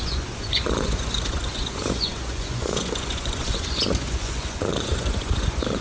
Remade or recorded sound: remade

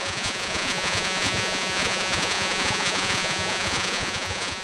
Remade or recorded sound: remade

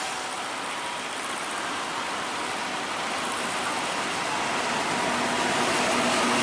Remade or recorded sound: recorded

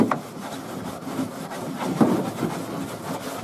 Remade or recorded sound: recorded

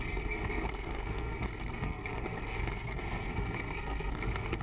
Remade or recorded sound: remade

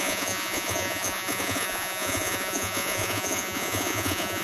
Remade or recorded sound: remade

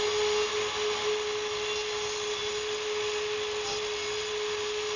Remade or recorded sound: recorded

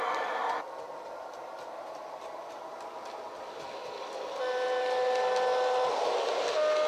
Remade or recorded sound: recorded